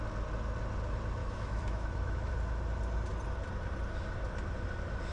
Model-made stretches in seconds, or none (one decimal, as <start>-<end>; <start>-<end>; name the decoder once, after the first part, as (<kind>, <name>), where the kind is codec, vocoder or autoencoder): 1.2-2.3 (autoencoder, DAC-VAE)